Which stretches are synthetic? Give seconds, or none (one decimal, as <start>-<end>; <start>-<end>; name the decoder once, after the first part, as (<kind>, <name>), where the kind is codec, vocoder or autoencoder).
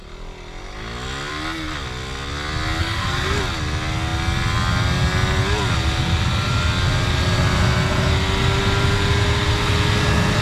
2.8-3.4 (codec, SNAC)